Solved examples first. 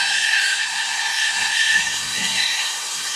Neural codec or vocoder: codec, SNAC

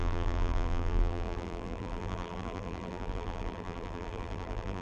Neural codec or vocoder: vocoder, BigVGAN v2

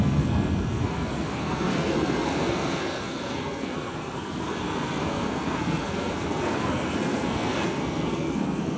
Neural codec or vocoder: codec, SNAC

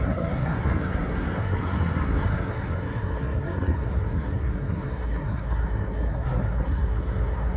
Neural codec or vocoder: codec, SNAC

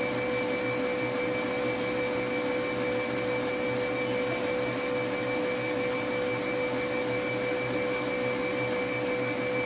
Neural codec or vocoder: none